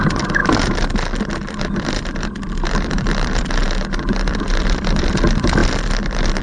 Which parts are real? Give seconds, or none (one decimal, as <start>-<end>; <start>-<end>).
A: 0.4-1.5; 5.6-6.4